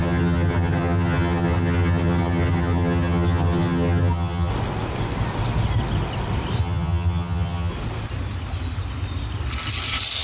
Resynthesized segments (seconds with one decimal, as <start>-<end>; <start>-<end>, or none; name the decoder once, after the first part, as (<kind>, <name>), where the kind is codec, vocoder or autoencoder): 0.0-4.5 (vocoder, HiFi-GAN); 6.6-7.7